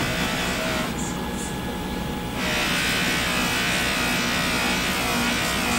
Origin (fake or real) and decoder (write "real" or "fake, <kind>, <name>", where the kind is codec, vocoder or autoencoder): real